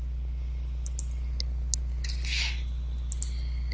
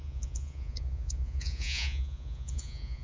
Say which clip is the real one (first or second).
first